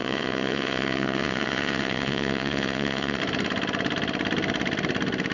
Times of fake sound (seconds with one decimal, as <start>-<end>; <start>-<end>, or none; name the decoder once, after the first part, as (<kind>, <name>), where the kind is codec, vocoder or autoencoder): 0.0-3.2 (vocoder, WaveNeXt)